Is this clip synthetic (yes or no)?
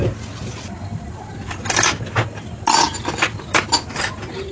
no